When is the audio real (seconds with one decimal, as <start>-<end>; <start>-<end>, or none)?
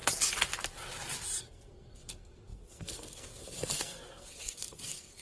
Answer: 0.0-1.4